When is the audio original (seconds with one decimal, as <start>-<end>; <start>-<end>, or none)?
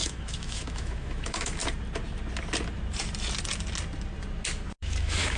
1.6-4.8